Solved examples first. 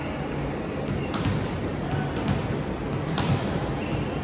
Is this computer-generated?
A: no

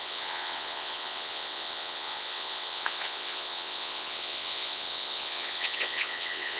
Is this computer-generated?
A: yes